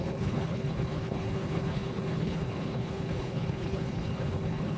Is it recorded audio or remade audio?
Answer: remade